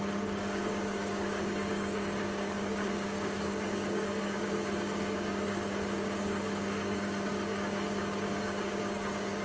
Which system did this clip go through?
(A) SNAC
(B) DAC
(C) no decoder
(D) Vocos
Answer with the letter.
B